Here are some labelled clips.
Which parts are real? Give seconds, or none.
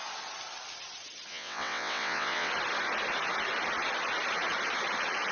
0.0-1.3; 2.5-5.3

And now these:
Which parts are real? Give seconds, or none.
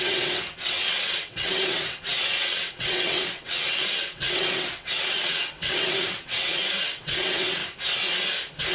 7.6-8.7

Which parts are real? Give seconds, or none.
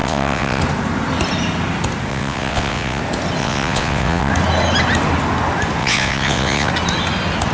0.6-2.1; 3.0-3.4; 4.3-5.8; 6.7-7.5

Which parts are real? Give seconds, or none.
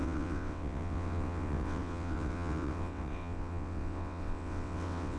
none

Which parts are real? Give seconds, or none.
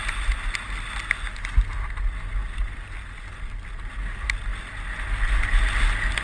0.0-6.2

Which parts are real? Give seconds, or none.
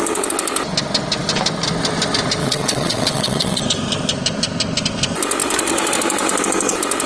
0.0-2.4; 3.6-7.1